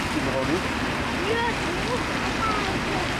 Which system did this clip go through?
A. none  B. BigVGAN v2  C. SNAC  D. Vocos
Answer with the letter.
A